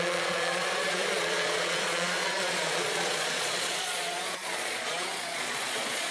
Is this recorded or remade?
remade